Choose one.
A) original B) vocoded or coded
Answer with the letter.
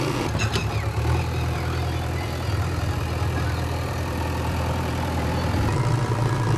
B